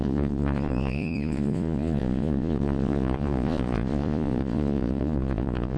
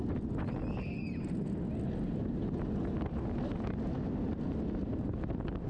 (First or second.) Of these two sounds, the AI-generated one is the first